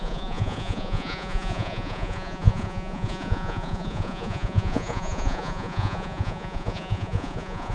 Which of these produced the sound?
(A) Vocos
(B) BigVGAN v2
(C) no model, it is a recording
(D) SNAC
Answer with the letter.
A